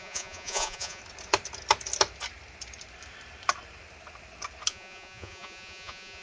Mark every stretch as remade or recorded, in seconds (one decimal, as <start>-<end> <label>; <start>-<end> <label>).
0.0-1.0 remade; 1.0-4.7 recorded; 4.7-6.2 remade